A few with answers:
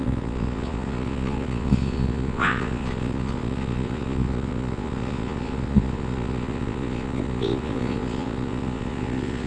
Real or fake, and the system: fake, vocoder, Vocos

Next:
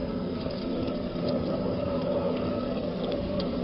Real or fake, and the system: fake, codec, SNAC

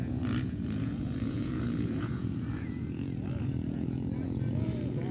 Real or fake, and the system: fake, vocoder, Vocos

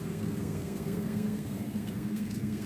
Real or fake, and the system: fake, codec, SNAC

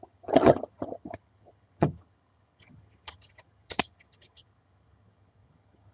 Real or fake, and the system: fake, vocoder, HiFi-GAN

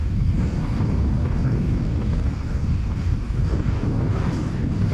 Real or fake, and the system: fake, codec, DAC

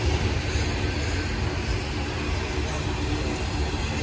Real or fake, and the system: real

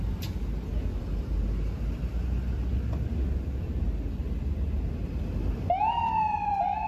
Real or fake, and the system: real